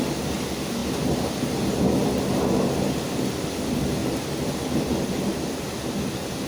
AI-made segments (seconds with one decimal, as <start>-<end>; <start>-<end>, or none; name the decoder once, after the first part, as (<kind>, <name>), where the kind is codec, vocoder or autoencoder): none